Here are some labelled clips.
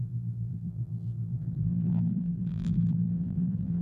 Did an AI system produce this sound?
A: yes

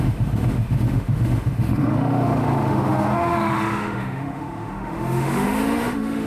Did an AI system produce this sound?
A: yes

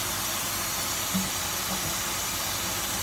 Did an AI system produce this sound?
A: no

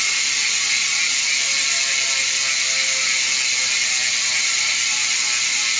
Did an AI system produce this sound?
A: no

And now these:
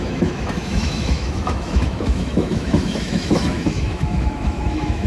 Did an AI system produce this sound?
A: yes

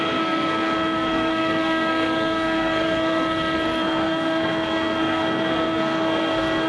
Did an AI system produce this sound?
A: yes